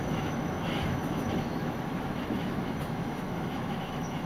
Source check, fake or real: fake